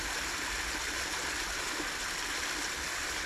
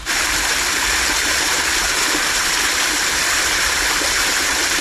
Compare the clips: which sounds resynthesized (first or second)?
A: second